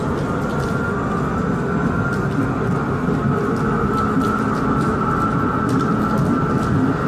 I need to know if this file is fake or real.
real